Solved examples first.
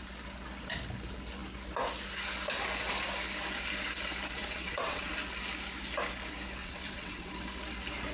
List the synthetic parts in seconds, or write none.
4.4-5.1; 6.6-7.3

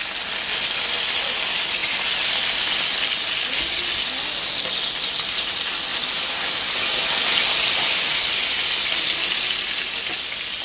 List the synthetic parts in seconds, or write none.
none

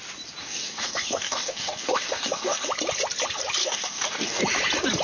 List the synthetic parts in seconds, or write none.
0.4-2.7; 3.6-4.4